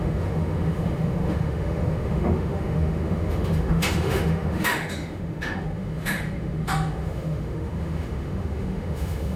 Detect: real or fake fake